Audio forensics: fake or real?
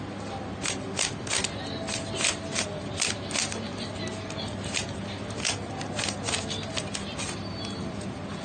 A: real